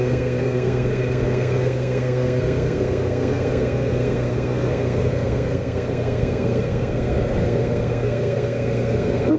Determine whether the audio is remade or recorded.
remade